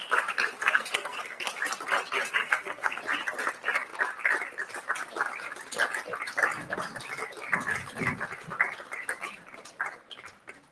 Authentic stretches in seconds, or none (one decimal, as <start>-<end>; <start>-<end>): 0.0-0.6; 1.5-2.4; 3.0-10.7